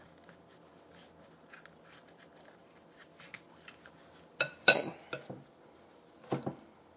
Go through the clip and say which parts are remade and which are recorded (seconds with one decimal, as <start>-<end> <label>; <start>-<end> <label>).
0.0-7.0 recorded

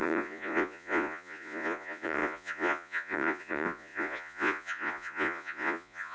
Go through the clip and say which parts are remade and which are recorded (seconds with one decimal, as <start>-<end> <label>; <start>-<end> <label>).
0.0-6.1 remade

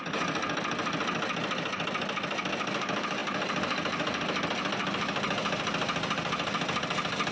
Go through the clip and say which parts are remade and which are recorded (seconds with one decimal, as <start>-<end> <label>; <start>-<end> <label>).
0.0-7.3 recorded

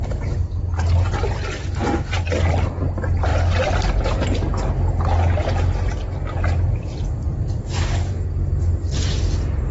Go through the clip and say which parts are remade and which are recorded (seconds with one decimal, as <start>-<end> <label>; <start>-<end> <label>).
0.0-9.7 recorded

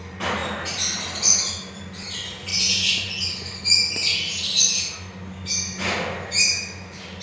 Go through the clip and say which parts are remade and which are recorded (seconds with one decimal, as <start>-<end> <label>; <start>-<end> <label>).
0.0-2.5 recorded; 2.5-3.2 remade; 3.2-7.2 recorded

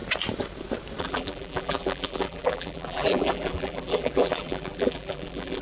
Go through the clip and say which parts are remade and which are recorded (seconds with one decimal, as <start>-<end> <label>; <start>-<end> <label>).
0.0-1.0 recorded; 1.0-5.6 remade

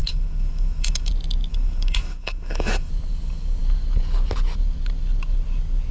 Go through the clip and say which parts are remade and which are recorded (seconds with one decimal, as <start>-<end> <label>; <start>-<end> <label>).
0.0-1.1 remade; 1.1-1.5 recorded; 1.5-2.9 remade; 2.9-5.9 recorded